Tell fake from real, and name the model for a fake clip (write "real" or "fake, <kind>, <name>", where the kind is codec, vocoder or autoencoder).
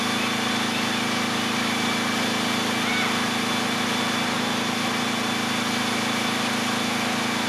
real